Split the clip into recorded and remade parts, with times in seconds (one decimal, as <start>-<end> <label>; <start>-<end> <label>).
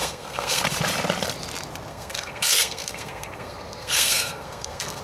0.0-0.6 remade; 0.6-1.9 recorded; 1.9-5.0 remade